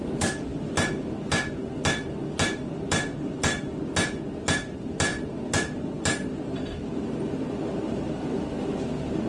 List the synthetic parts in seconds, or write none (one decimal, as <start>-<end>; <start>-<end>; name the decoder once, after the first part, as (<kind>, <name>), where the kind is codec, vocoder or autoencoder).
none